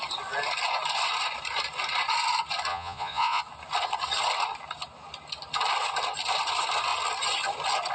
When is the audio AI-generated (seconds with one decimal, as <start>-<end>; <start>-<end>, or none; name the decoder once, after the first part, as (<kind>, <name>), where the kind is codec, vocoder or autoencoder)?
2.7-3.4 (vocoder, Vocos)